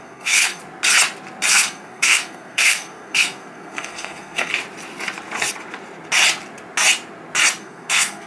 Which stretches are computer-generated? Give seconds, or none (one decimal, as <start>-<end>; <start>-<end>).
0.0-0.6; 1.5-4.5; 7.6-8.3